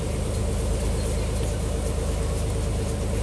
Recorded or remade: recorded